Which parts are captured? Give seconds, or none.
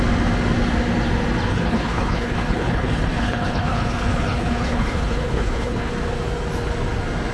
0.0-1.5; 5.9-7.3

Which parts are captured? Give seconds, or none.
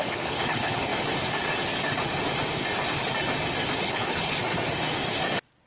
0.9-3.8; 4.3-5.7